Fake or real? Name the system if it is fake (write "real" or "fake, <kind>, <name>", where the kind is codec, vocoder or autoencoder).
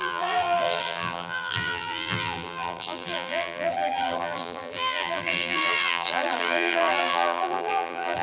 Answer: fake, vocoder, BigVGAN v2